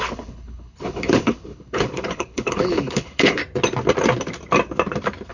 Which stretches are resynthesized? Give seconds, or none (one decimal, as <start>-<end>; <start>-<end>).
0.0-3.4